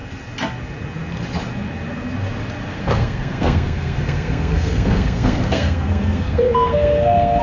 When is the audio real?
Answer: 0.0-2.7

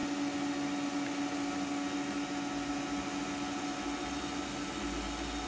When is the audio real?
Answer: 0.0-5.5

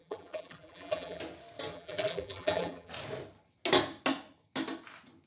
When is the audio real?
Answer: 1.2-1.7; 2.9-5.3

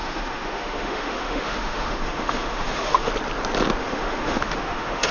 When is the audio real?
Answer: 3.1-3.8

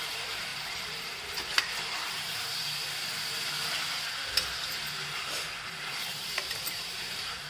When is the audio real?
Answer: 2.5-5.6